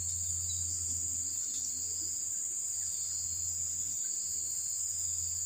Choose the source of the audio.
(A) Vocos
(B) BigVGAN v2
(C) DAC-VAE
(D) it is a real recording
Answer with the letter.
D